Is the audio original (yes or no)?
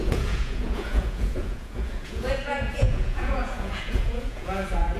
no